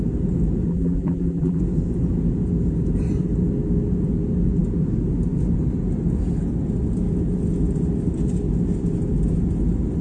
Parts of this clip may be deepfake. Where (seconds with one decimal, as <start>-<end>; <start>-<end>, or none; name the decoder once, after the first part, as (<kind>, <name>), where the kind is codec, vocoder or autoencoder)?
0.7-1.6 (vocoder, BigVGAN v2)